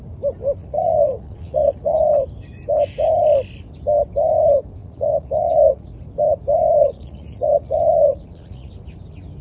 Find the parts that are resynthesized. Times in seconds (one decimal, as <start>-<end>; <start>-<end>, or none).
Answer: 0.6-2.0; 4.8-5.9; 6.8-8.7